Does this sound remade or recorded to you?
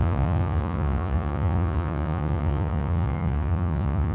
remade